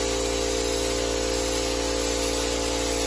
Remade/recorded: recorded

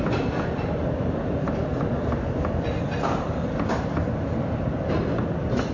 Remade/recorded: remade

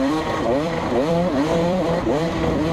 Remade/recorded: remade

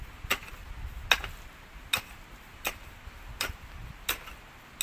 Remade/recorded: recorded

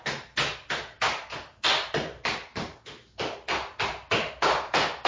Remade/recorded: recorded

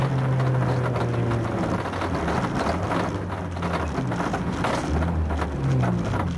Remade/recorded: recorded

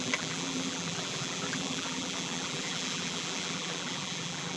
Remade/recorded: remade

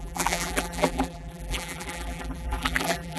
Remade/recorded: remade